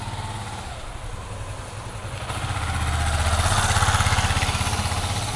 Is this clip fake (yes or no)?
no